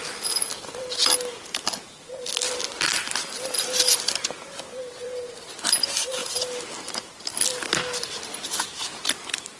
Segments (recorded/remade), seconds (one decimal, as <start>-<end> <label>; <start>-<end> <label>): 0.0-1.0 remade; 1.0-2.3 recorded; 2.3-6.2 remade; 6.2-8.3 recorded; 8.3-9.6 remade